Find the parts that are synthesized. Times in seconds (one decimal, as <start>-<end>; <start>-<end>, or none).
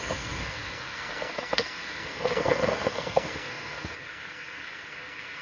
0.0-5.4